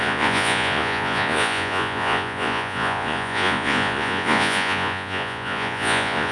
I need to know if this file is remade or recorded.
remade